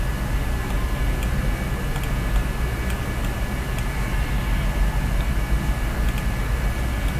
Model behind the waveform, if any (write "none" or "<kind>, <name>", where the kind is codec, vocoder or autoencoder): none